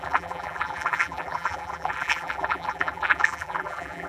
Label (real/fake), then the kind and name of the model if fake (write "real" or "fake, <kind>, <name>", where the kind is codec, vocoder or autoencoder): fake, vocoder, BigVGAN v2